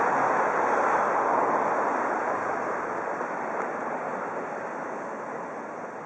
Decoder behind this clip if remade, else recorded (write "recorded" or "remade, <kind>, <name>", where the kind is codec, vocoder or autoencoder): recorded